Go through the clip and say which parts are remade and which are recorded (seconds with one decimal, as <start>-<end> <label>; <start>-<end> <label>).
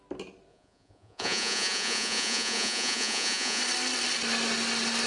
0.0-0.5 recorded; 0.5-3.6 remade; 3.6-5.1 recorded